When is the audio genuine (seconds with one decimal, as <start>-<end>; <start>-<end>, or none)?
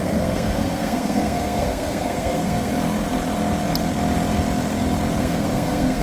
2.7-5.2